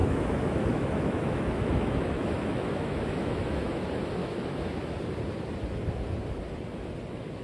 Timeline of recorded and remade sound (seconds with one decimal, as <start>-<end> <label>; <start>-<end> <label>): 0.0-3.8 remade; 3.8-4.2 recorded; 4.2-4.9 remade; 4.9-7.4 recorded